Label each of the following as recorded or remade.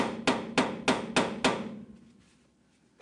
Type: recorded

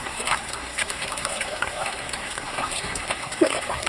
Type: remade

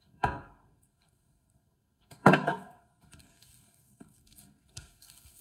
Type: remade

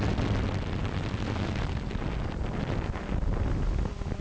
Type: recorded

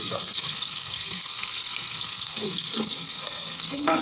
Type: remade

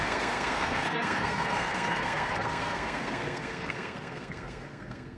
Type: remade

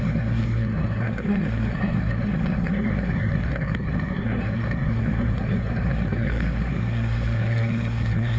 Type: remade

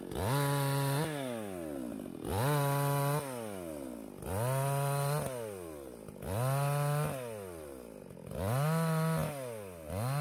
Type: recorded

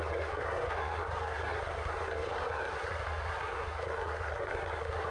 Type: remade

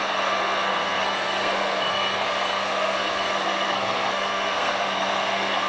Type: remade